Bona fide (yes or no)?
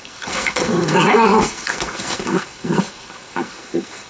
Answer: no